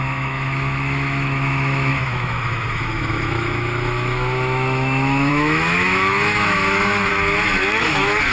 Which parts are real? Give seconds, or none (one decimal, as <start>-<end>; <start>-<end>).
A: 7.1-7.8